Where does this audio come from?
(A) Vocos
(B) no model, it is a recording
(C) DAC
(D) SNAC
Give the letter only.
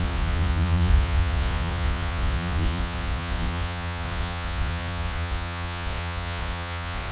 A